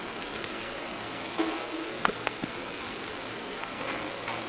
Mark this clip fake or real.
fake